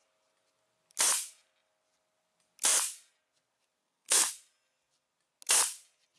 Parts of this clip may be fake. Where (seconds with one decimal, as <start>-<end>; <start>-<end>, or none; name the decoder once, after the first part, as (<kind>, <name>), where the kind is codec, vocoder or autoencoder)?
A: 3.8-4.3 (codec, SNAC)